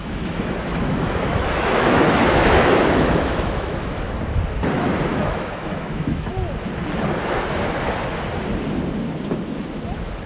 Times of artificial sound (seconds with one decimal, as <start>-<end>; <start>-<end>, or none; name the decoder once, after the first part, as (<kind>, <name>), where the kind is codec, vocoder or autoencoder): 0.0-4.1 (autoencoder, DAC-VAE); 5.1-6.3